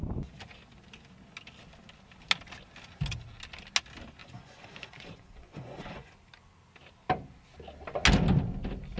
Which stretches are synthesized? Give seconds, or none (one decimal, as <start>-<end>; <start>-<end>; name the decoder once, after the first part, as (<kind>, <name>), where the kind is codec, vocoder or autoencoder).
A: 4.2-6.1 (vocoder, Vocos)